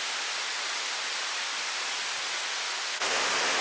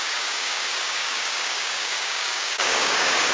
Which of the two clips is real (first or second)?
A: first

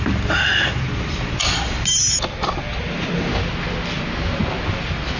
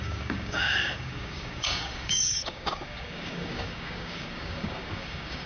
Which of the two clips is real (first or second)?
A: first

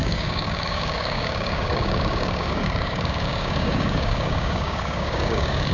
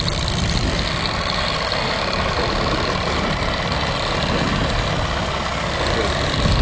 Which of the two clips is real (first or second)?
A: second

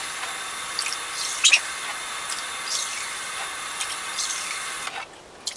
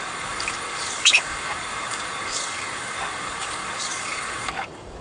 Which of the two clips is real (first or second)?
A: first